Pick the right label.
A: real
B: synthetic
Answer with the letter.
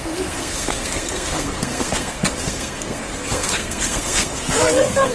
B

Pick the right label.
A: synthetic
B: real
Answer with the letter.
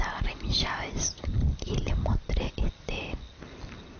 B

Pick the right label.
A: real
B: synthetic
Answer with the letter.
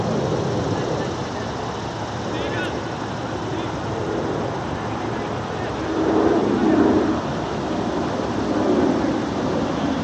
A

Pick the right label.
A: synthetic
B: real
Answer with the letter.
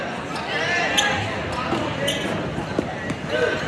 B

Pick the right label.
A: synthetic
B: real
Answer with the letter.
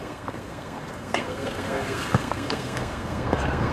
A